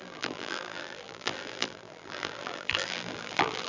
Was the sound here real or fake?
fake